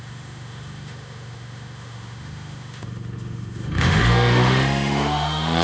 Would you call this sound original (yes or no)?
no